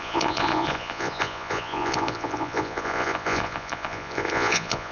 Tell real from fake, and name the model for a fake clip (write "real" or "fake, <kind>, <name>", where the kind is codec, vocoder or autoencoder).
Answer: fake, vocoder, Vocos